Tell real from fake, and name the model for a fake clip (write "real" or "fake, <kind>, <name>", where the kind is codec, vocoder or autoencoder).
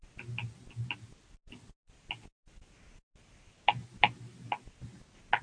real